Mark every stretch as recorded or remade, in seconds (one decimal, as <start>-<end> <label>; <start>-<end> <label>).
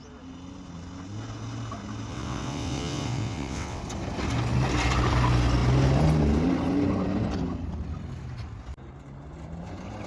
0.0-2.1 recorded; 2.1-3.8 remade; 3.8-10.1 recorded